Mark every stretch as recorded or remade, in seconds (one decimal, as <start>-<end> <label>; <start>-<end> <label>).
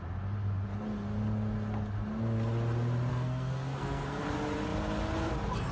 0.0-3.1 recorded; 3.1-4.2 remade; 4.2-5.7 recorded